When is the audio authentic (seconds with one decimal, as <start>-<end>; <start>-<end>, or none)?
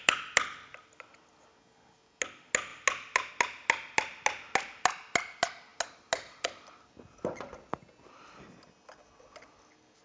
0.0-10.0